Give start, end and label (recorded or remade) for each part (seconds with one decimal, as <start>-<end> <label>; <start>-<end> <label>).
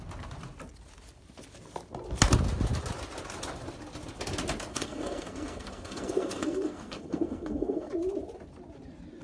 0.0-4.7 recorded; 4.7-7.9 remade; 7.9-9.2 recorded